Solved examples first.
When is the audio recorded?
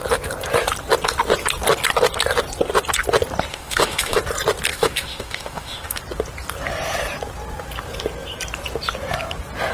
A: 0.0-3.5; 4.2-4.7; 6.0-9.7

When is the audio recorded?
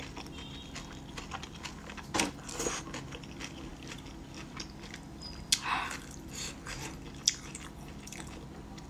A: 0.0-8.9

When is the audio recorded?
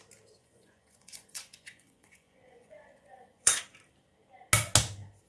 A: 0.0-0.4; 3.6-5.3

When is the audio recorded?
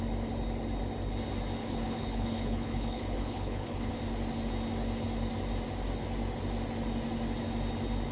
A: 0.0-1.6; 3.9-8.1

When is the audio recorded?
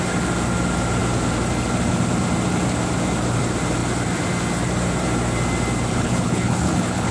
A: 0.0-5.9